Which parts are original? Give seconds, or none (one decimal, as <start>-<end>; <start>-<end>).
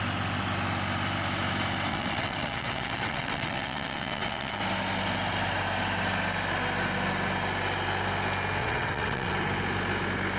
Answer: 0.0-1.9; 4.6-8.6; 9.3-10.4